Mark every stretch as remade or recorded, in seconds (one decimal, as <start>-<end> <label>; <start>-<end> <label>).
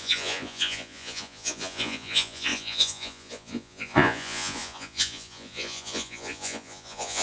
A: 0.0-7.2 remade